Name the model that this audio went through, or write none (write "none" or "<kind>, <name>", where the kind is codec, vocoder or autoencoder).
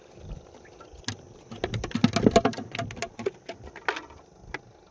none